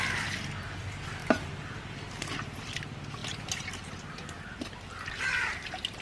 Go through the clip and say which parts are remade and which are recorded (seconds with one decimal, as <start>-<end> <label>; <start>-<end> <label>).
0.0-6.0 recorded